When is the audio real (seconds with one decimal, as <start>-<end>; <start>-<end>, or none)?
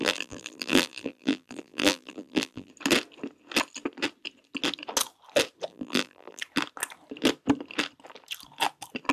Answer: 2.7-5.7; 6.4-9.1